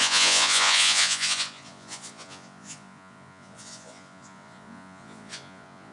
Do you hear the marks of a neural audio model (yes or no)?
yes